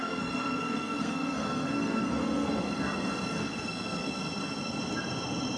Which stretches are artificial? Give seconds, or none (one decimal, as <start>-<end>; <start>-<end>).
0.0-2.6; 3.4-4.1